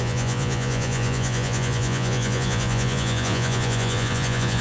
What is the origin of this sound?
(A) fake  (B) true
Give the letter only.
A